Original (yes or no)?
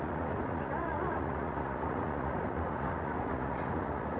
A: no